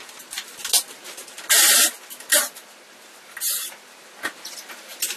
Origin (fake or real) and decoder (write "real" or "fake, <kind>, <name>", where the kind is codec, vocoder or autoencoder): real